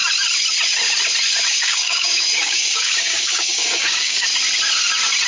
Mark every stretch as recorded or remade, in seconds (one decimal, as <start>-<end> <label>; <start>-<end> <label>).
0.0-1.5 recorded; 1.5-4.3 remade; 4.3-5.3 recorded